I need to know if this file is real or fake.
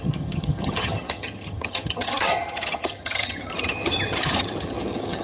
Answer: fake